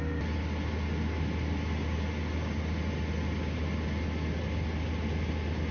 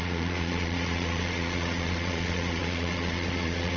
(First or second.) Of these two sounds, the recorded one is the first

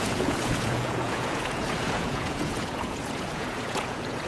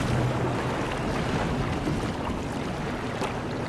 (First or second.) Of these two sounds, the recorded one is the second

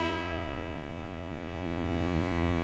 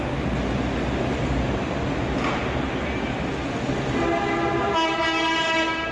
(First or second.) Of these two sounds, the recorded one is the second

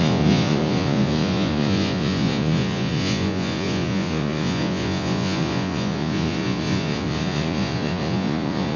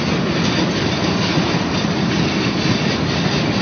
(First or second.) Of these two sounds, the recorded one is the second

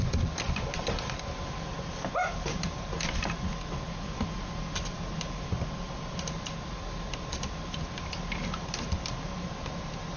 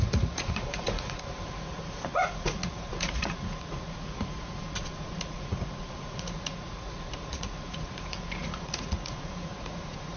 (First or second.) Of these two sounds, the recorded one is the first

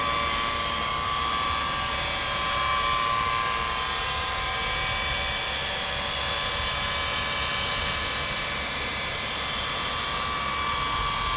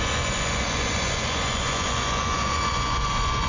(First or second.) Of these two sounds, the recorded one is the first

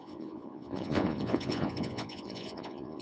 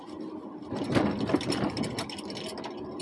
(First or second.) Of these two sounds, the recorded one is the second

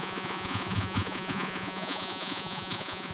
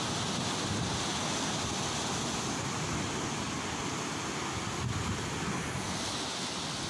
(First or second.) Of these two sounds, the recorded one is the second